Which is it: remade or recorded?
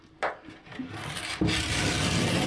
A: recorded